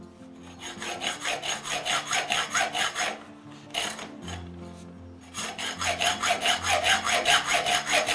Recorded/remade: recorded